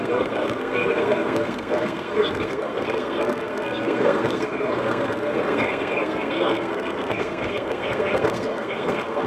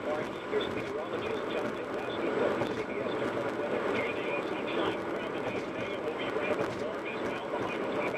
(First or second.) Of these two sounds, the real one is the second